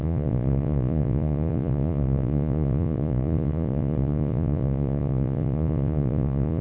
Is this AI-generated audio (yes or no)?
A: yes